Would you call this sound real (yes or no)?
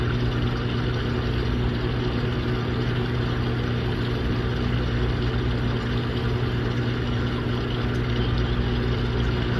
yes